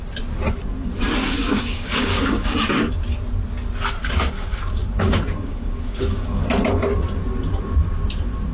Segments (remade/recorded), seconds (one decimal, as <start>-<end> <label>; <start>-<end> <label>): 0.0-1.2 recorded; 1.2-2.6 remade; 2.6-4.0 recorded; 4.0-6.4 remade; 6.4-8.5 recorded